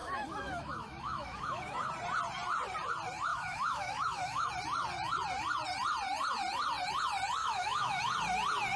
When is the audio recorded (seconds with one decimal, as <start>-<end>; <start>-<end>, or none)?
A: 1.9-3.3; 4.5-7.4; 8.0-8.8